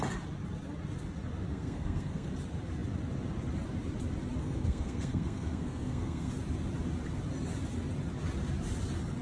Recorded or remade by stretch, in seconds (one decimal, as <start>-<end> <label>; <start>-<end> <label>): 0.0-1.5 recorded; 1.5-2.3 remade; 2.3-4.4 recorded; 4.4-6.3 remade; 6.3-9.2 recorded